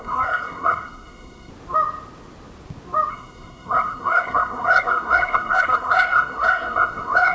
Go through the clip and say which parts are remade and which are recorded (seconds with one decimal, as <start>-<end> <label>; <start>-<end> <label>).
0.0-1.5 remade; 1.5-3.1 recorded; 3.1-7.3 remade